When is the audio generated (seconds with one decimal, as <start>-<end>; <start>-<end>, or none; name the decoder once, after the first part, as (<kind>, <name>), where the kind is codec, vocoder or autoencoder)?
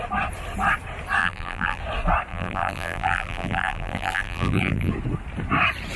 1.2-1.8 (vocoder, BigVGAN v2); 2.3-4.9